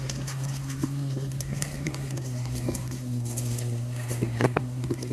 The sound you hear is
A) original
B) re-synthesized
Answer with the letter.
B